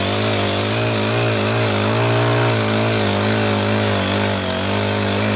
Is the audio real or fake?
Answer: real